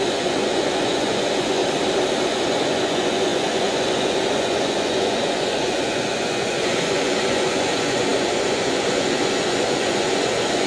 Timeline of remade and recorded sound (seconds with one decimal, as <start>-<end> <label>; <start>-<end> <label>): 0.0-1.6 remade; 1.6-2.2 recorded; 2.2-10.7 remade